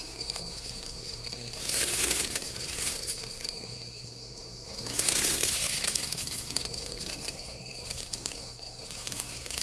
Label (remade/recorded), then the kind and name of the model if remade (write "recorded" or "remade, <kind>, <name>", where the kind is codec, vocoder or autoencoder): remade, codec, SNAC